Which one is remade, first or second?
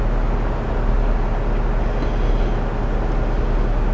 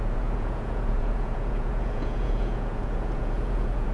second